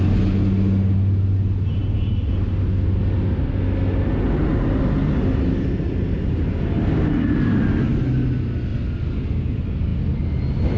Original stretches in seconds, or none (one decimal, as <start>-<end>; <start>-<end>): 0.0-10.8